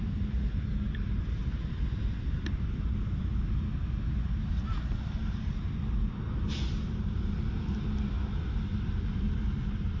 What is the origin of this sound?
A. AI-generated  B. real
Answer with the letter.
B